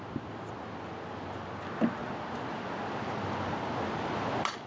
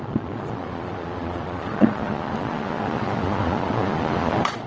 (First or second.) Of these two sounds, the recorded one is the first